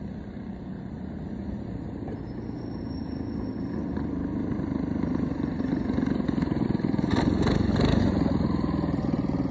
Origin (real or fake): real